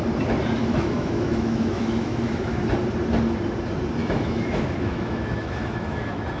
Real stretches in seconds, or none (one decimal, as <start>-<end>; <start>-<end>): 0.0-0.6; 2.6-4.0